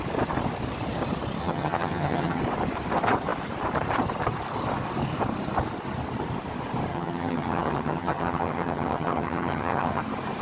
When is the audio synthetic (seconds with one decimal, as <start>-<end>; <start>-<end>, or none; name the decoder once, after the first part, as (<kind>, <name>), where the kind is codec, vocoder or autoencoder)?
1.4-2.4 (vocoder, HiFi-GAN); 6.9-10.0